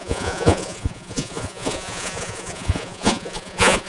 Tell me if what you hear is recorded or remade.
remade